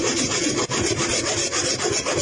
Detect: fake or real real